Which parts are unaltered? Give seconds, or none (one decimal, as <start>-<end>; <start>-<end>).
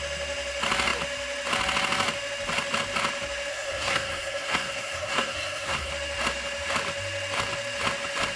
0.0-3.5; 5.9-8.4